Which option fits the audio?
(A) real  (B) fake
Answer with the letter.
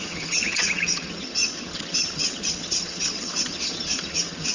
B